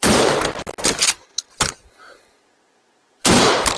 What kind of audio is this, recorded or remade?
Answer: remade